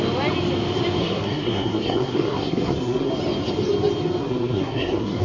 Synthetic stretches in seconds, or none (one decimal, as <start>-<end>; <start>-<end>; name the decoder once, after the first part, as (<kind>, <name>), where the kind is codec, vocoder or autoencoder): 1.0-3.1 (codec, SNAC); 4.2-5.2